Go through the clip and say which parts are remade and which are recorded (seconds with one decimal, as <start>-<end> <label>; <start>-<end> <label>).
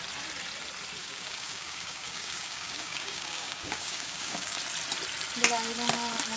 0.0-1.0 recorded; 1.0-4.6 remade; 4.6-6.4 recorded